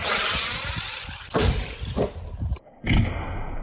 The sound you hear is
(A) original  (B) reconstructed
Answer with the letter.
B